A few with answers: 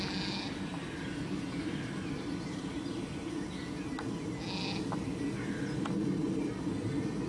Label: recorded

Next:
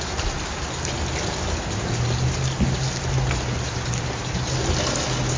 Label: recorded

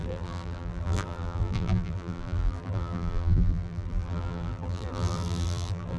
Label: remade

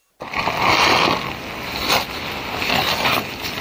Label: recorded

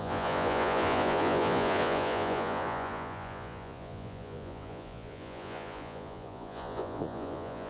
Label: remade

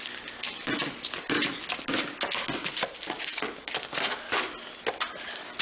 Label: recorded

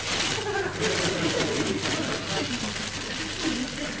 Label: recorded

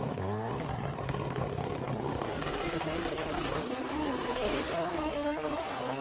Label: remade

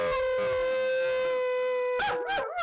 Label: recorded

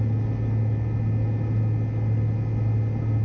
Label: recorded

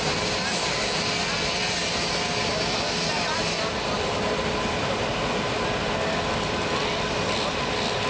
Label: recorded